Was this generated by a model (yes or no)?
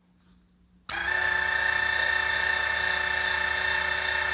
no